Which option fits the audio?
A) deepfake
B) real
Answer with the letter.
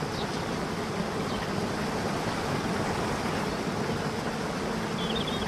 B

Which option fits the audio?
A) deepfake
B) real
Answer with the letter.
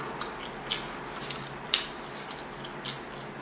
B